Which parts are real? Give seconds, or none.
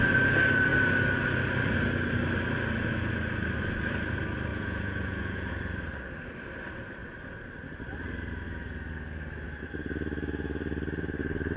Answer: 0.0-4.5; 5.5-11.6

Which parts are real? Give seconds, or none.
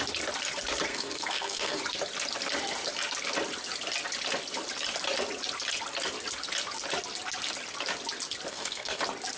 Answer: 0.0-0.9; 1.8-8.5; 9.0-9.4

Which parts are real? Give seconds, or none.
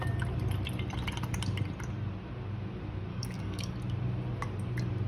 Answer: 0.0-3.1; 3.7-5.1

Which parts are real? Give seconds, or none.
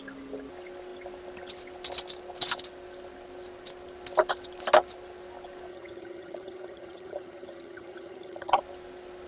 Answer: 0.0-5.7; 8.6-9.3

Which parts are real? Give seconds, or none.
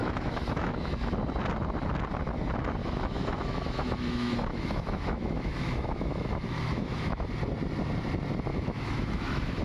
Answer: 0.9-2.8; 7.3-8.5